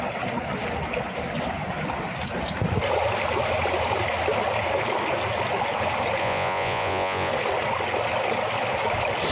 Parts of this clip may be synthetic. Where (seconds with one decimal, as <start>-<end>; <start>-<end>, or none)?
6.2-7.3